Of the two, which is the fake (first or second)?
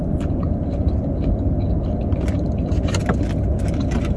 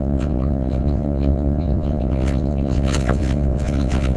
second